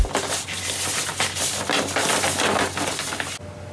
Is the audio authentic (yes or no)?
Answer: yes